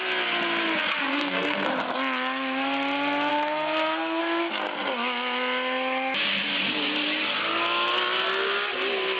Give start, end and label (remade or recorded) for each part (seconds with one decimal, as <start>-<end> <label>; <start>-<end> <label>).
0.0-1.1 recorded; 1.1-1.7 remade; 1.7-3.3 recorded; 3.3-4.2 remade; 4.2-9.2 recorded